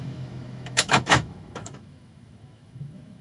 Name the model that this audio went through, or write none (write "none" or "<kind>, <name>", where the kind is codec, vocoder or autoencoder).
autoencoder, DAC-VAE